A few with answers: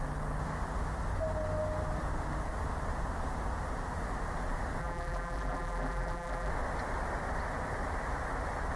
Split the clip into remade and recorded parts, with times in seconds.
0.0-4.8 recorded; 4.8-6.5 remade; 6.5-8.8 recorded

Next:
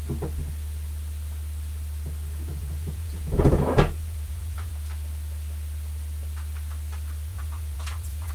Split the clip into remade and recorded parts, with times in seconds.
0.0-2.5 recorded; 2.5-4.7 remade; 4.7-7.3 recorded; 7.3-8.3 remade

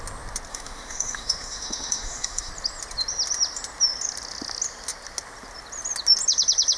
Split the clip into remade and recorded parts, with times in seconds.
0.0-0.5 recorded; 0.5-2.5 remade; 2.5-6.8 recorded